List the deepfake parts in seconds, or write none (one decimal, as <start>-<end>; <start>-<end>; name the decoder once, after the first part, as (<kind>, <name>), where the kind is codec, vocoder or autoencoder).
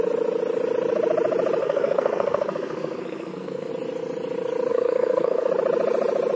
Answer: 1.6-3.7 (codec, SNAC); 4.7-5.5